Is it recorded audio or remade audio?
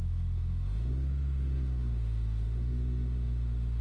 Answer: remade